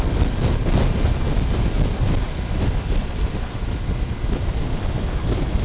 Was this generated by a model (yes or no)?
no